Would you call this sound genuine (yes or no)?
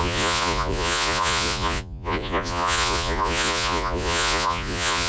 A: no